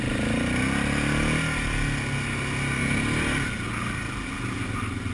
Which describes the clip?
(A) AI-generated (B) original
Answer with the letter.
B